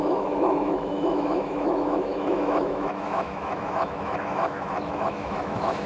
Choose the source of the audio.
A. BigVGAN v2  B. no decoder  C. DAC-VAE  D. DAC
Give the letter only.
C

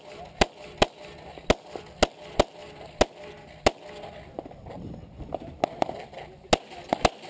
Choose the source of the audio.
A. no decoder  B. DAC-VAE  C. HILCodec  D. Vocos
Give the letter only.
A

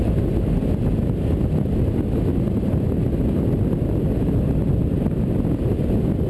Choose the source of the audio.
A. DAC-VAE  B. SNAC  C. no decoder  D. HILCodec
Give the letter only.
C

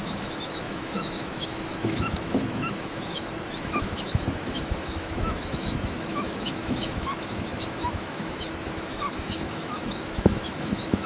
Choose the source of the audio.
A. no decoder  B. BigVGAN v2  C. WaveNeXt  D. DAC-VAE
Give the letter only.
D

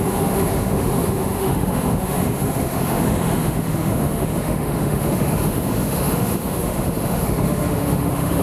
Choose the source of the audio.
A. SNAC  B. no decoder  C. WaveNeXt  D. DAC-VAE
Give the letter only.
D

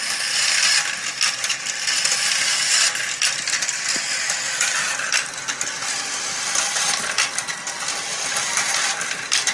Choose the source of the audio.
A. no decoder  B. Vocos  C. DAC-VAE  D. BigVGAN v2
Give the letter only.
A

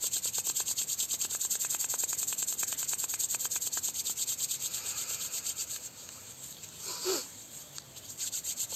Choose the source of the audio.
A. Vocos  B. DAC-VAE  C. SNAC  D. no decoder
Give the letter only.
D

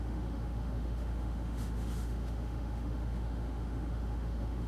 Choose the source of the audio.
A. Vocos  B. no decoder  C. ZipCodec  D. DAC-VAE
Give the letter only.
D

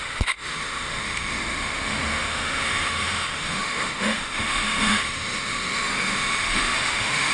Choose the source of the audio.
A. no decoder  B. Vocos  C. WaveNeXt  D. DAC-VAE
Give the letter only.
D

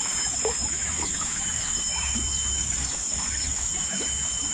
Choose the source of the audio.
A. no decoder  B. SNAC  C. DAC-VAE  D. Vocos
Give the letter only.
C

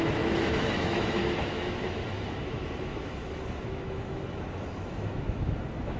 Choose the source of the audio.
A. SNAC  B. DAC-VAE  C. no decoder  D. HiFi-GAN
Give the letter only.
B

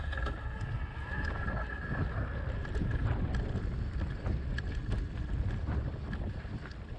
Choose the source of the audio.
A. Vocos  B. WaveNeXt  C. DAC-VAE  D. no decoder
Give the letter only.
D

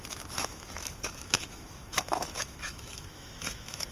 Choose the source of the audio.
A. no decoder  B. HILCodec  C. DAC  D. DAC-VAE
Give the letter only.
D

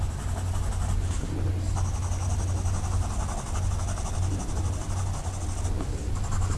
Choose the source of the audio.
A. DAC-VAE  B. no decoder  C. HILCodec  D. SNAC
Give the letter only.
B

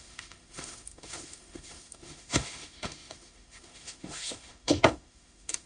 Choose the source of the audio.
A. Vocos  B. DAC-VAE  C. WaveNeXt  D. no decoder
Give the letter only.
B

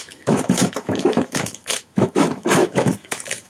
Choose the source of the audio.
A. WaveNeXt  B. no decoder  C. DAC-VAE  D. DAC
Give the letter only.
C